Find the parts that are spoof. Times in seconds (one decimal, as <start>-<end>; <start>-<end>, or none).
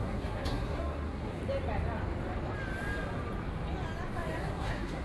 0.0-1.4; 4.4-5.0